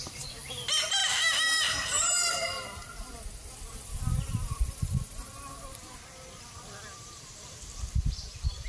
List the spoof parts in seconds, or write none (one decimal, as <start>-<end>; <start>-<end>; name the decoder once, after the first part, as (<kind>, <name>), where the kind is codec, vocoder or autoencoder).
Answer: none